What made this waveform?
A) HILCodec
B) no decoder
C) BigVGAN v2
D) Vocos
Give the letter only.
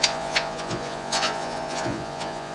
D